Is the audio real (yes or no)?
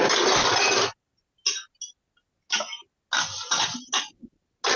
yes